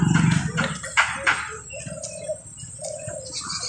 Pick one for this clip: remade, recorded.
recorded